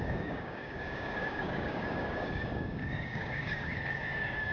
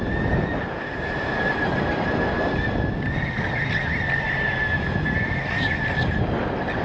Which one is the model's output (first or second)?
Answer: first